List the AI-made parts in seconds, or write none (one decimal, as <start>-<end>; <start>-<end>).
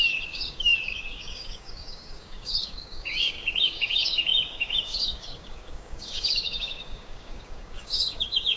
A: 0.0-8.6